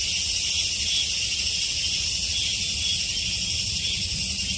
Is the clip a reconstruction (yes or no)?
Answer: no